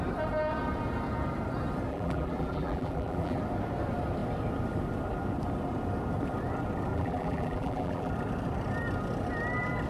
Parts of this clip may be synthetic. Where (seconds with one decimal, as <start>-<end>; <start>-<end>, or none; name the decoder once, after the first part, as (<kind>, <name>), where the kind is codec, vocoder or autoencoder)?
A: 1.9-3.4 (vocoder, BigVGAN v2); 6.9-8.1